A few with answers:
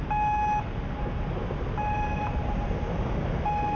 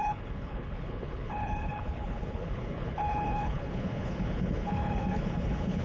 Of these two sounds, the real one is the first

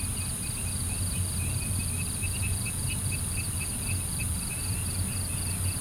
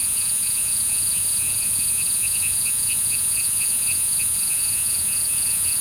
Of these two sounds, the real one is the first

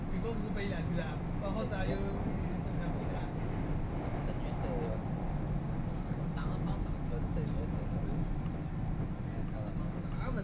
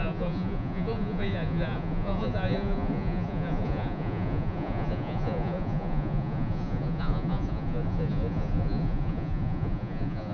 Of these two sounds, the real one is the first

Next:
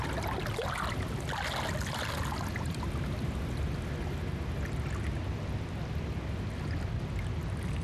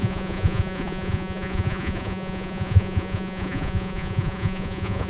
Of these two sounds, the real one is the first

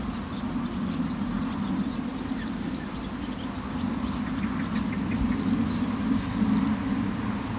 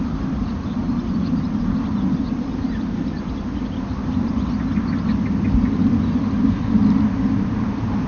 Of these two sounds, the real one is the first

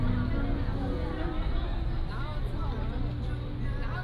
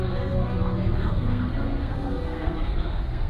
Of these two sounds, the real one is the first